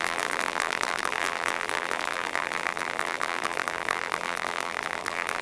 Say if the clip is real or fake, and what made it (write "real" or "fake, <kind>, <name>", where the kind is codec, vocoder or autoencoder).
fake, vocoder, BigVGAN v2